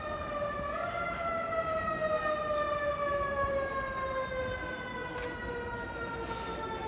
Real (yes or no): yes